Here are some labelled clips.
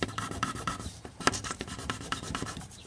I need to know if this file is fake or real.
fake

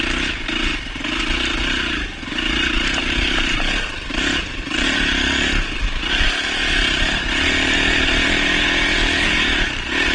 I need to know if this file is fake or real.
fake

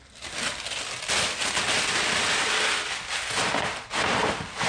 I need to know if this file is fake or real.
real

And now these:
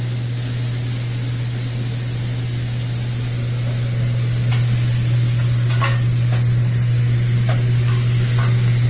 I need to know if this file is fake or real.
real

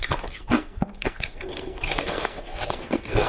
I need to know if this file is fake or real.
fake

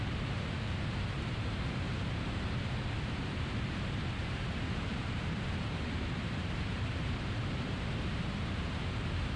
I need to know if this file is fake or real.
fake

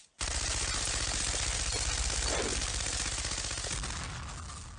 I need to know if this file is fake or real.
real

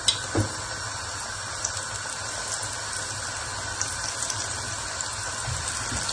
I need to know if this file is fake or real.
real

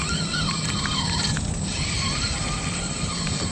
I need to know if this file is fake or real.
real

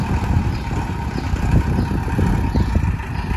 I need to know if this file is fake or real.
real